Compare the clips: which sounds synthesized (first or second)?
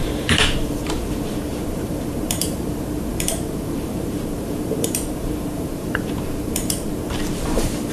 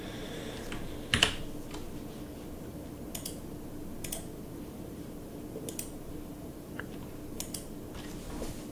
first